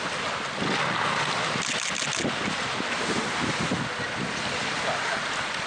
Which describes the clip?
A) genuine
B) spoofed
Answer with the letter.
A